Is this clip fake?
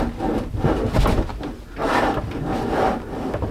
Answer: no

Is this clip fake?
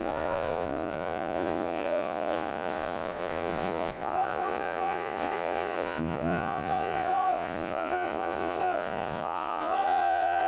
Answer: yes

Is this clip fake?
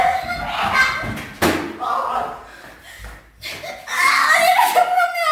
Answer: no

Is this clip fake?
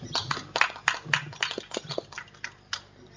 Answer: no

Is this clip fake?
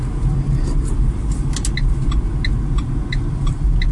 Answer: no